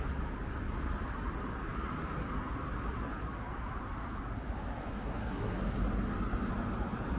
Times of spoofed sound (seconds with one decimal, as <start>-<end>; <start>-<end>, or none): 4.9-5.6